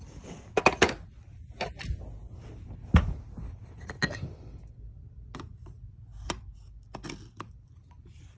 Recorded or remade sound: recorded